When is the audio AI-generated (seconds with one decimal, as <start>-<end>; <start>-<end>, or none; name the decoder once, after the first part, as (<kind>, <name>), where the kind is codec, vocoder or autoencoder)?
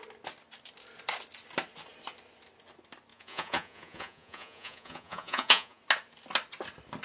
3.1-5.8 (vocoder, Vocos)